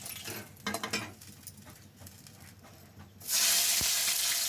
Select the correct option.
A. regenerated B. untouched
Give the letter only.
B